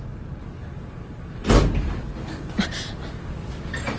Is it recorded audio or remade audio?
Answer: recorded